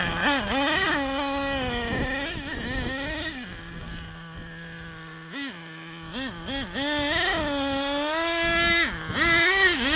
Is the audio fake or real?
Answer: real